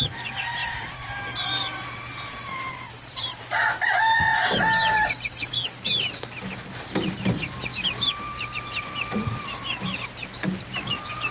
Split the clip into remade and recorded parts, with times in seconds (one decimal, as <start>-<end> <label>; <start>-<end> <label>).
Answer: 0.0-3.6 remade; 3.6-6.4 recorded; 6.4-7.7 remade; 7.7-8.2 recorded; 8.2-9.3 remade; 9.3-10.6 recorded; 10.6-11.3 remade